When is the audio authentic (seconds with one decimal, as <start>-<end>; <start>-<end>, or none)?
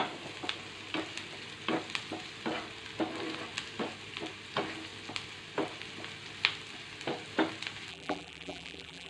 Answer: 0.0-7.9